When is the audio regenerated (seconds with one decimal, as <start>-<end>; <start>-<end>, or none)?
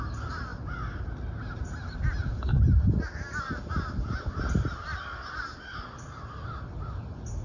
none